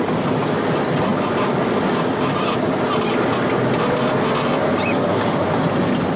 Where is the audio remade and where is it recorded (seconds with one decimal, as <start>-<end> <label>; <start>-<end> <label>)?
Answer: 0.0-6.2 recorded